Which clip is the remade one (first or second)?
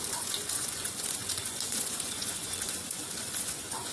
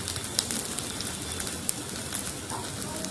first